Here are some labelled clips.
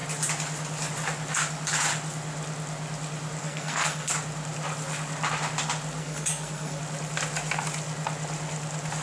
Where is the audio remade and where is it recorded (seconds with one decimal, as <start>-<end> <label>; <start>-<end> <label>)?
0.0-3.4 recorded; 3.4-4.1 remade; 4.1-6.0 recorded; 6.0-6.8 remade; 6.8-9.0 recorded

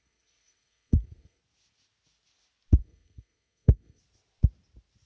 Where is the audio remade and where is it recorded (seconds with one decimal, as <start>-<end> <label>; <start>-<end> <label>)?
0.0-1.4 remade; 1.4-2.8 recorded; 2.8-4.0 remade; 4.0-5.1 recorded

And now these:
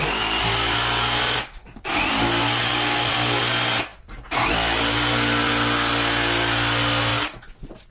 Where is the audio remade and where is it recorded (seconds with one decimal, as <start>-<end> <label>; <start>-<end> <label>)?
0.0-7.9 recorded

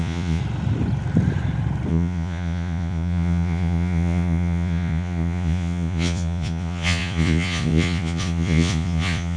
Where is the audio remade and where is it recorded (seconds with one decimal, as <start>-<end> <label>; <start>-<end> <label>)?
0.0-0.4 remade; 0.4-1.9 recorded; 1.9-9.4 remade

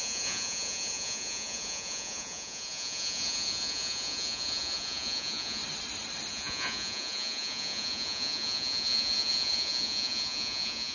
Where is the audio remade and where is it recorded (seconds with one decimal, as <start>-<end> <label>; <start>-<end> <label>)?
0.0-5.6 remade; 5.6-6.3 recorded; 6.3-10.9 remade